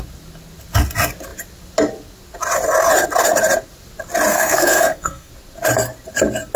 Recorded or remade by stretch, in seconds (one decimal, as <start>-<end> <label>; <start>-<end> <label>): 0.0-4.3 recorded; 4.3-5.3 remade; 5.3-6.6 recorded